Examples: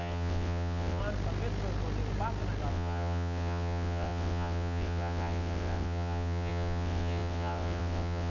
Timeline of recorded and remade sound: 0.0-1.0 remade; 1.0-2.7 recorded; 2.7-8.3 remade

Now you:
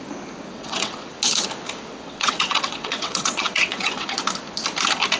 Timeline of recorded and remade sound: 0.0-0.5 recorded; 0.5-1.1 remade; 1.1-1.9 recorded; 1.9-4.2 remade; 4.2-5.2 recorded

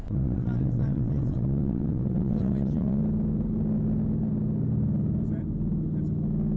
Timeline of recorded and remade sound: 0.0-3.0 remade; 3.0-6.6 recorded

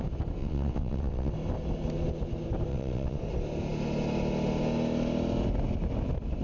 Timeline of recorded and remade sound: 0.0-0.4 recorded; 0.4-1.3 remade; 1.3-2.7 recorded; 2.7-3.2 remade; 3.2-6.4 recorded

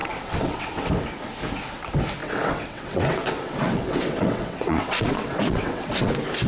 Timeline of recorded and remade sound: 0.0-0.9 remade; 0.9-2.2 recorded; 2.2-6.1 remade; 6.1-6.5 recorded